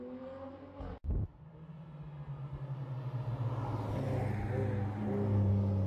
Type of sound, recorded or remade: recorded